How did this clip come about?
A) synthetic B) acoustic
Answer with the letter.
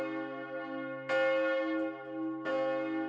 B